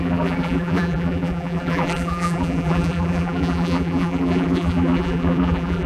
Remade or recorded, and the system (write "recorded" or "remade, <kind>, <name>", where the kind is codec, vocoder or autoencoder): remade, vocoder, BigVGAN v2